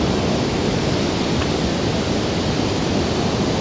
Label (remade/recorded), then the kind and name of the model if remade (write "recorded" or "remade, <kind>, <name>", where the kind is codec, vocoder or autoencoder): recorded